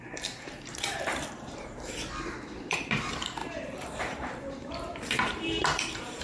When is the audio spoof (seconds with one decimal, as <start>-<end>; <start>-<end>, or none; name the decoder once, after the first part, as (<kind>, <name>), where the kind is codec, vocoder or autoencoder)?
0.0-2.0 (vocoder, BigVGAN v2); 2.6-6.2